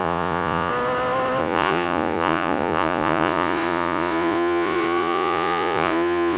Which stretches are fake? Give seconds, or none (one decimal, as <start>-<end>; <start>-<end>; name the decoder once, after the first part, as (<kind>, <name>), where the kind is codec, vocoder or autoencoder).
0.0-0.7 (vocoder, Vocos); 1.4-6.4